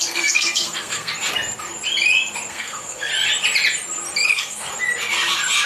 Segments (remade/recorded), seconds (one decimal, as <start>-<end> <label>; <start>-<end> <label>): 0.0-1.1 remade; 1.1-2.5 recorded; 2.5-3.1 remade; 3.1-4.3 recorded; 4.3-4.7 remade; 4.7-5.7 recorded